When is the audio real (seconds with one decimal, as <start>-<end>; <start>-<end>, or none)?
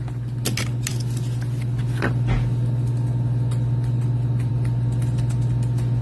0.0-6.0